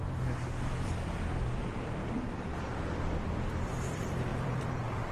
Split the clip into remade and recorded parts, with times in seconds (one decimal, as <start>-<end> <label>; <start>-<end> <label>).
0.0-0.6 recorded; 0.6-5.1 remade